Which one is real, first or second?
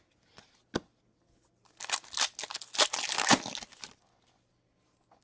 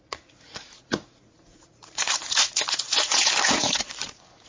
first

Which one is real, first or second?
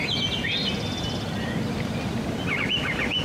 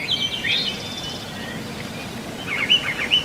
second